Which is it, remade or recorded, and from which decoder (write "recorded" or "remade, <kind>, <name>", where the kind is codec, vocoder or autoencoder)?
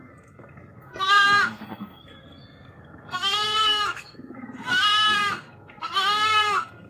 remade, codec, SNAC